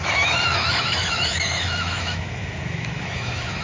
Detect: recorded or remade remade